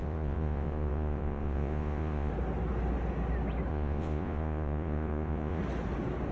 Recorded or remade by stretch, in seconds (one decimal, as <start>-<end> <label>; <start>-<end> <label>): 0.0-2.3 remade; 2.3-3.7 recorded; 3.7-5.6 remade; 5.6-6.3 recorded